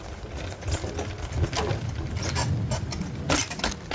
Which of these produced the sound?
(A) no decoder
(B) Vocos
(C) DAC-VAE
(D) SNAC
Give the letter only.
A